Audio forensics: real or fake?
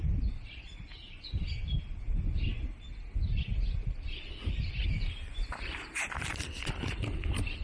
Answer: real